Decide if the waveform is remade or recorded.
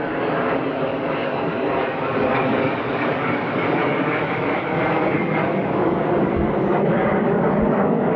remade